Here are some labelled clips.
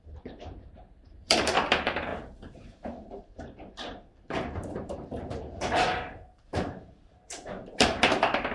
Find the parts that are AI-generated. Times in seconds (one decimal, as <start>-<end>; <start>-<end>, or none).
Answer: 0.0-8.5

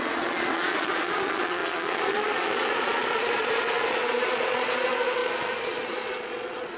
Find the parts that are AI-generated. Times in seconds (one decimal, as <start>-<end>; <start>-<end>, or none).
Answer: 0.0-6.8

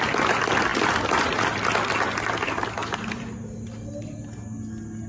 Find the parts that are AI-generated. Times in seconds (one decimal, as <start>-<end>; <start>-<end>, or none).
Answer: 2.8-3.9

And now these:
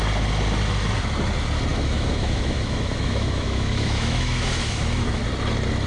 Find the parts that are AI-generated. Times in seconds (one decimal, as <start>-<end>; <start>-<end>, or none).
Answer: 1.7-5.2

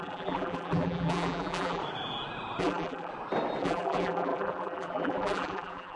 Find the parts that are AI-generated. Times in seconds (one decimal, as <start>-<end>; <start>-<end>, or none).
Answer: 0.0-1.8; 2.6-3.1; 3.6-6.0

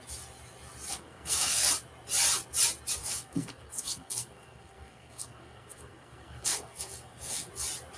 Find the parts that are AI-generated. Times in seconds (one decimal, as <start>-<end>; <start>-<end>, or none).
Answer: 0.9-1.7; 3.0-7.5

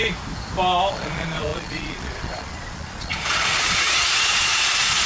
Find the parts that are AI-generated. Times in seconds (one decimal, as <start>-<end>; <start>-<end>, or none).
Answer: 0.9-5.1

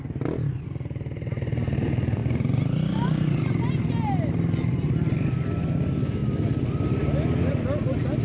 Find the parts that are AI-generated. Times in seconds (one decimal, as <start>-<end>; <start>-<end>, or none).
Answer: none